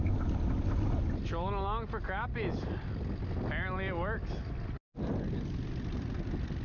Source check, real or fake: real